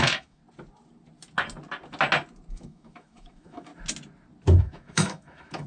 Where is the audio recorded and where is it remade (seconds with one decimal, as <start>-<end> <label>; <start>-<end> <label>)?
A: 0.0-0.4 remade; 0.4-2.5 recorded; 2.5-3.7 remade; 3.7-4.6 recorded; 4.6-5.7 remade